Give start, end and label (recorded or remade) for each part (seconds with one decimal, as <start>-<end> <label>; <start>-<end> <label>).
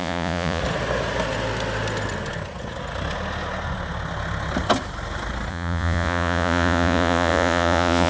0.0-0.6 remade; 0.6-5.5 recorded; 5.5-8.1 remade